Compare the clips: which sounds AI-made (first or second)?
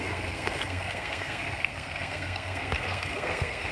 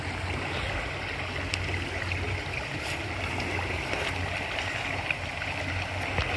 first